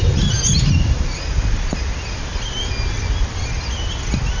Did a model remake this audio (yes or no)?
no